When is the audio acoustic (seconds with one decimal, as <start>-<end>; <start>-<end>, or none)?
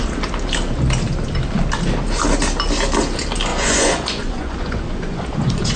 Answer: 0.0-3.5